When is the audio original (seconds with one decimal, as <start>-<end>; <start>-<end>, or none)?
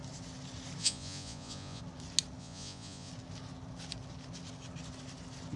0.0-0.8; 1.8-2.4; 3.1-5.6